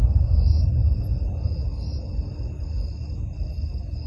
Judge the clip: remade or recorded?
recorded